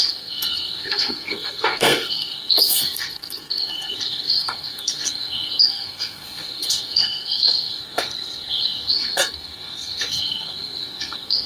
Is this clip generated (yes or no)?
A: yes